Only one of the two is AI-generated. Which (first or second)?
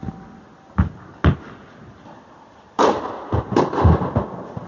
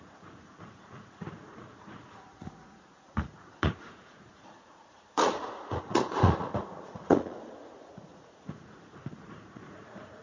second